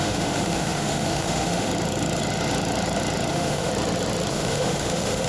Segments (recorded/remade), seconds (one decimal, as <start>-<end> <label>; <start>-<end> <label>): 0.0-1.7 remade; 1.7-3.3 recorded; 3.3-3.7 remade; 3.7-4.3 recorded; 4.3-5.3 remade